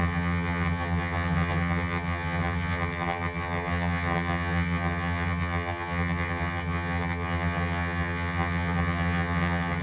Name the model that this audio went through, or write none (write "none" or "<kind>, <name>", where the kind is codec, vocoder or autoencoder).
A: vocoder, HiFi-GAN